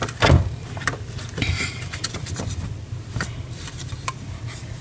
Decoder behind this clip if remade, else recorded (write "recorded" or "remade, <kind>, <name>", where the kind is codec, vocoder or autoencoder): remade, vocoder, BigVGAN v2